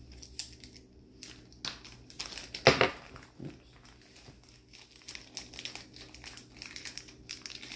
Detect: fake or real real